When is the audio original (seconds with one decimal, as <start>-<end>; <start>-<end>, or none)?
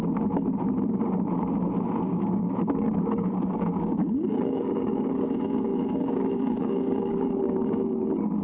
0.0-2.1; 5.3-5.7; 7.4-8.4